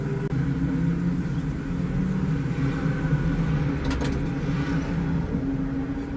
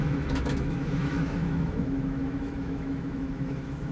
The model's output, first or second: second